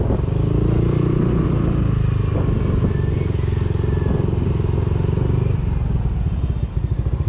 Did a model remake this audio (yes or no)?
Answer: no